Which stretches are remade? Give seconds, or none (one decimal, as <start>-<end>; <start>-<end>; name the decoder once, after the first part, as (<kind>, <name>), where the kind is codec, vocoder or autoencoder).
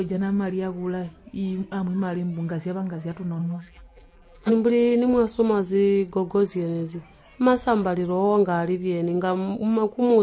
3.4-4.5 (vocoder, BigVGAN v2)